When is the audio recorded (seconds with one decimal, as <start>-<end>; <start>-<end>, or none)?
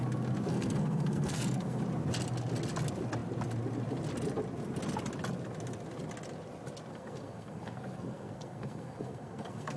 0.0-0.5; 1.8-6.9